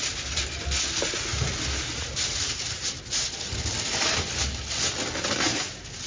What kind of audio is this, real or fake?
real